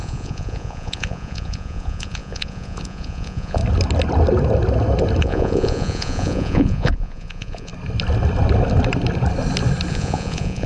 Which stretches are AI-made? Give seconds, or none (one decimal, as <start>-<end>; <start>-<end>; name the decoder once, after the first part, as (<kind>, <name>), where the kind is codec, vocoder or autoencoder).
0.0-3.6 (vocoder, Vocos); 5.2-7.7; 9.9-10.7